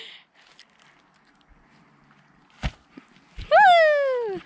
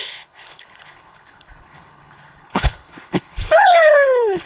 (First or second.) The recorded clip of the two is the first